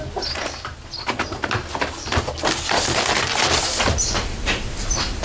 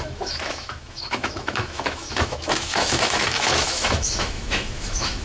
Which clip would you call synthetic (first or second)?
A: second